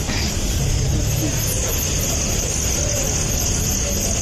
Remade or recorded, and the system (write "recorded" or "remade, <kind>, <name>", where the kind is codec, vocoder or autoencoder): recorded